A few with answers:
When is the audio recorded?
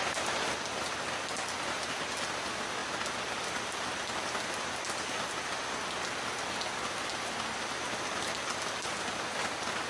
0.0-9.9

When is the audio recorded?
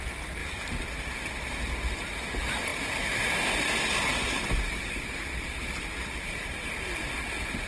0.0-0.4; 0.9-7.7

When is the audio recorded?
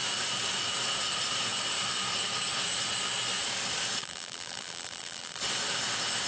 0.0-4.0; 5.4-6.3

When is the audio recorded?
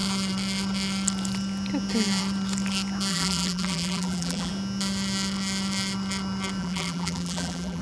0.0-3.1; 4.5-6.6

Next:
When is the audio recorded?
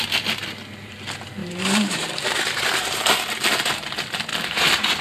0.0-1.4; 3.0-4.3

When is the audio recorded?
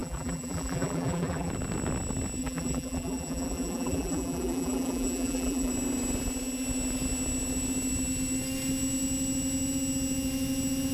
1.5-2.4; 5.7-10.9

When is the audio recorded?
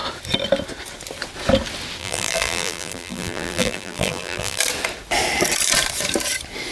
0.0-2.0; 4.6-6.7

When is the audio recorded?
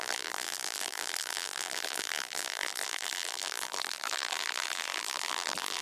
none